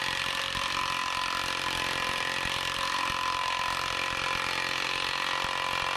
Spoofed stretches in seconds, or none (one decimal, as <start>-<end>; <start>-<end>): none